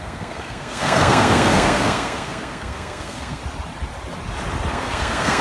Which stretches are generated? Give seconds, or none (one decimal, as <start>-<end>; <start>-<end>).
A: 0.0-3.4; 4.7-5.4